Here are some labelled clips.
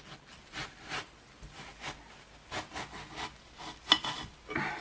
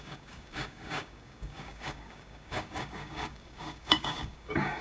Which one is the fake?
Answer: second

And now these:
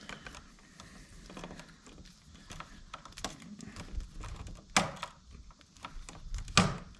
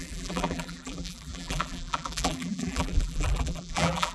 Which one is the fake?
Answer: second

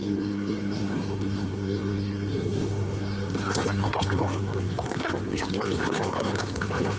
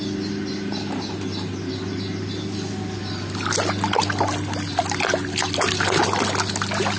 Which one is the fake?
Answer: first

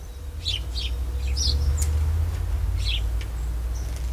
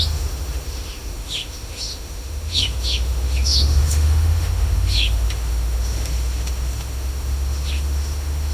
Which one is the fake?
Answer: second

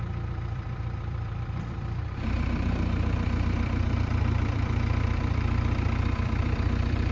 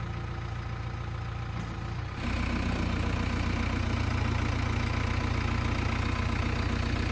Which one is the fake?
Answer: first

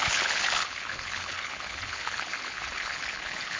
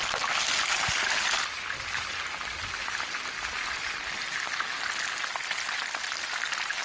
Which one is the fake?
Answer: first